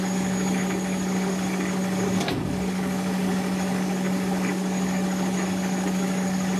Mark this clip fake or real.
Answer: fake